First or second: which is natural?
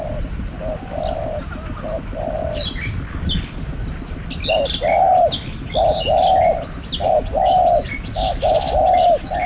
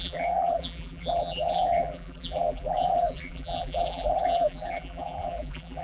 first